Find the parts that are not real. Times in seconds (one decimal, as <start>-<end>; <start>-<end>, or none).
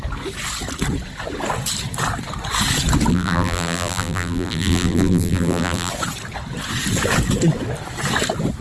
3.1-5.9